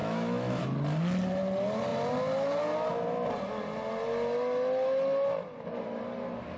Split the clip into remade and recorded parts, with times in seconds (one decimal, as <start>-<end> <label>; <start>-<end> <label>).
0.0-0.6 remade; 0.6-6.6 recorded